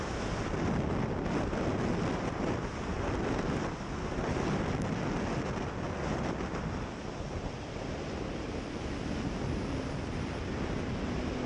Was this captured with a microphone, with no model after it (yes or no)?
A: yes